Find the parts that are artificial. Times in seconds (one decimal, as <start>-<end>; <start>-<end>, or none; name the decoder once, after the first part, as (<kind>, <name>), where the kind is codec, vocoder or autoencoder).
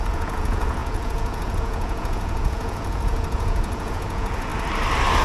0.0-4.5 (vocoder, Vocos)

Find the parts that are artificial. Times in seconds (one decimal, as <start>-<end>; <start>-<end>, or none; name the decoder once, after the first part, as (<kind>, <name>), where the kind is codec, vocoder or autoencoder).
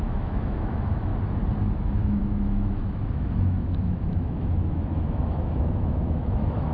0.0-1.1 (autoencoder, DAC-VAE); 1.6-6.7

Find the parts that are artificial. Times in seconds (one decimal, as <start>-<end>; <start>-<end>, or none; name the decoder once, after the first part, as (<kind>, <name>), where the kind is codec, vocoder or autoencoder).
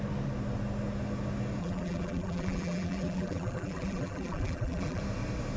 1.6-5.0 (vocoder, BigVGAN v2)